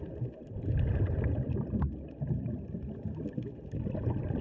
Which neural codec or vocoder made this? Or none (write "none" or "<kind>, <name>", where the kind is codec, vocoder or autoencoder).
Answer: none